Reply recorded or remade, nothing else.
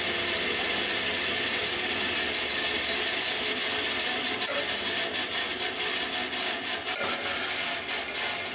recorded